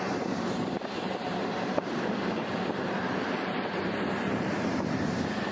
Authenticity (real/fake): fake